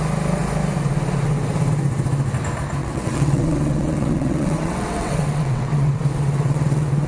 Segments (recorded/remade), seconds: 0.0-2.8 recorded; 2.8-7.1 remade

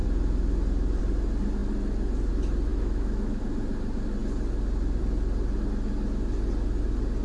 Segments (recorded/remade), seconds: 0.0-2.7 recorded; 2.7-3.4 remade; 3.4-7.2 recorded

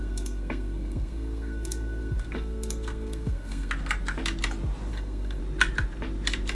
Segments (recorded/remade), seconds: 0.0-3.7 remade; 3.7-4.9 recorded; 4.9-5.4 remade; 5.4-6.5 recorded